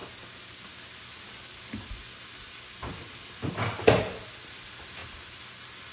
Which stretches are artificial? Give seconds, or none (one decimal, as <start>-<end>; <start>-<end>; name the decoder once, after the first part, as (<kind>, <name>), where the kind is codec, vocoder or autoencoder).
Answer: none